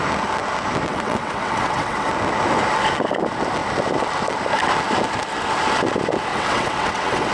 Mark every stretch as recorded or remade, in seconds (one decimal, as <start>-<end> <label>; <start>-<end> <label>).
0.0-0.9 recorded; 0.9-2.1 remade; 2.1-6.3 recorded; 6.3-7.3 remade